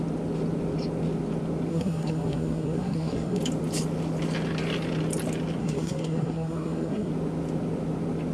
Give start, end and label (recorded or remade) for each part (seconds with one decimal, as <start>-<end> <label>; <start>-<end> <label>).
0.0-1.7 recorded; 1.7-3.4 remade; 3.4-5.6 recorded; 5.6-7.1 remade; 7.1-8.3 recorded

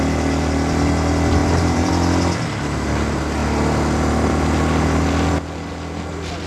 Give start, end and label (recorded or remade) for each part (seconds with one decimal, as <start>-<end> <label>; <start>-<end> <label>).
0.0-1.4 recorded; 1.4-1.9 remade; 1.9-6.5 recorded

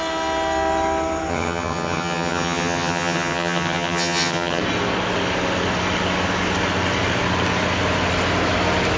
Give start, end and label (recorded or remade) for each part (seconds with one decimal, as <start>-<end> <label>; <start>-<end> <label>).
0.0-1.3 recorded; 1.3-4.6 remade; 4.6-9.0 recorded

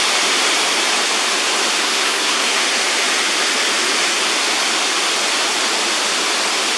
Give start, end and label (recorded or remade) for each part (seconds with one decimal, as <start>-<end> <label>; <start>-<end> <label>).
0.0-1.8 recorded; 1.8-2.6 remade; 2.6-6.8 recorded

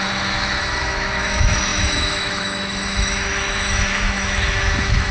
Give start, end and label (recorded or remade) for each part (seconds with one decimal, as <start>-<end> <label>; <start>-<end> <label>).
0.0-5.1 remade

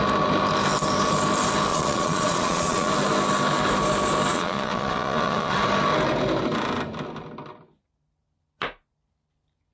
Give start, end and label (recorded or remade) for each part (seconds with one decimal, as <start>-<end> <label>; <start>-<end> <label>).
0.0-1.7 recorded; 1.7-2.9 remade; 2.9-4.3 recorded; 4.3-5.6 remade; 5.6-9.7 recorded

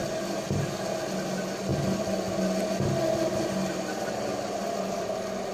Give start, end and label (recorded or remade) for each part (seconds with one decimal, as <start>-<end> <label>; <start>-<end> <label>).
0.0-5.5 recorded

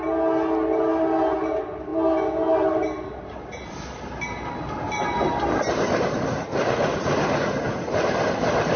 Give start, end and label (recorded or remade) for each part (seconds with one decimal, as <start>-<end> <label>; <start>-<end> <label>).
0.0-6.5 recorded; 6.5-8.1 remade; 8.1-8.8 recorded